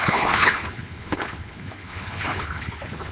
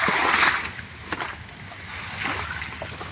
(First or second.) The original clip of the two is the second